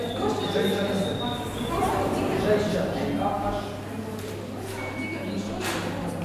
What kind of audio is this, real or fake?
real